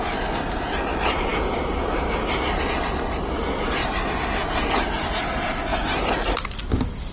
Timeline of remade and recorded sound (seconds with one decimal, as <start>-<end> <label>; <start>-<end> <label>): 0.0-7.1 recorded